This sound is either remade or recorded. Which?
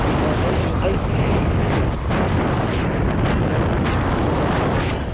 recorded